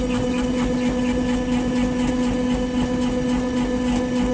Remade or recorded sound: recorded